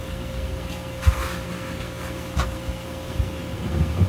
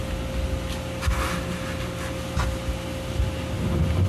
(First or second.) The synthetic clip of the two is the first